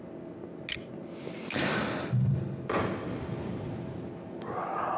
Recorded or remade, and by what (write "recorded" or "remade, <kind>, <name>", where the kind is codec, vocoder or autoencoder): recorded